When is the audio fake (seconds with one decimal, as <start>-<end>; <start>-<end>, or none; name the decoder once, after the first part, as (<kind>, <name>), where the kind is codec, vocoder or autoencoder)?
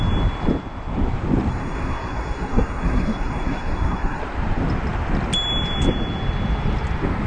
1.5-4.2 (codec, SNAC)